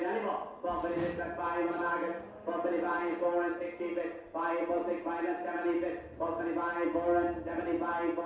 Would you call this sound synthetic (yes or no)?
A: no